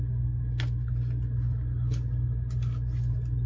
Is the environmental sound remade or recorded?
recorded